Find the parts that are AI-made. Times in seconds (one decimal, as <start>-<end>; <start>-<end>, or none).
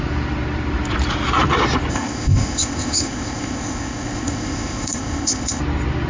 1.9-5.6